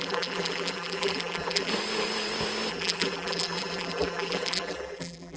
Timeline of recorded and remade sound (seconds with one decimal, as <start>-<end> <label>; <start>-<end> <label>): 0.0-1.7 remade; 1.7-2.7 recorded; 2.7-5.4 remade